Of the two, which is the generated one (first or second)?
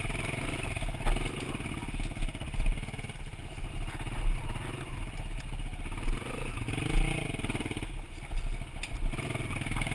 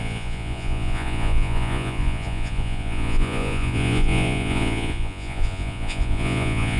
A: second